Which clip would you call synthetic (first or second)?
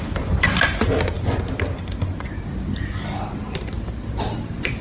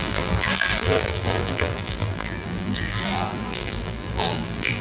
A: second